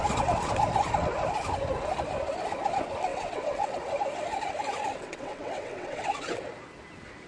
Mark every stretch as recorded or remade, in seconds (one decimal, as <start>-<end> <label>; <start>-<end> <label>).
0.0-3.1 recorded; 3.1-3.8 remade; 3.8-4.9 recorded; 4.9-6.4 remade; 6.4-7.3 recorded